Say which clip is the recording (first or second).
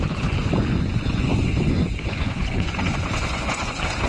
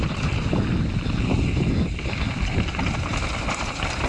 second